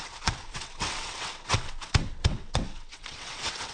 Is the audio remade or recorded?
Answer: remade